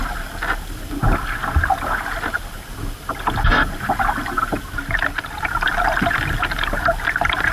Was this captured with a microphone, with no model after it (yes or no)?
yes